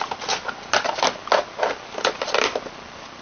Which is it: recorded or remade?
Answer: recorded